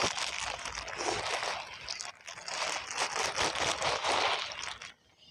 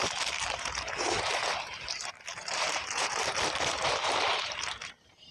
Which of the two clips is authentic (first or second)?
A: first